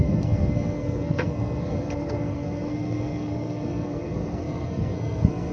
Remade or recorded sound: remade